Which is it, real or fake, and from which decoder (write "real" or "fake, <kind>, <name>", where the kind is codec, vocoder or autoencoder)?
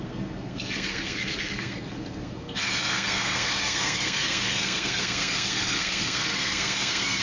fake, codec, SNAC